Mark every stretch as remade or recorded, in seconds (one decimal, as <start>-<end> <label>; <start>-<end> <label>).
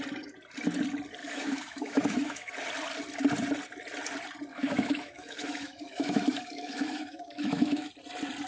0.0-1.2 recorded; 1.2-2.5 remade; 2.5-4.5 recorded; 4.5-7.9 remade; 7.9-8.5 recorded